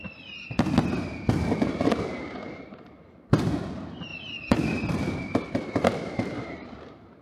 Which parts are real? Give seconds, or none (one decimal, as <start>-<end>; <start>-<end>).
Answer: 0.0-1.7; 4.1-4.9